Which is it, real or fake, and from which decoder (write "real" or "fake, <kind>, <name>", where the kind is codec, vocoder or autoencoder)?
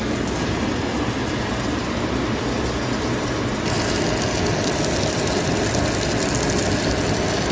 real